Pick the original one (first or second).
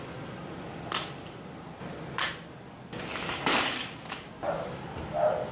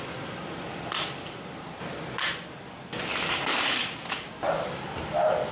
first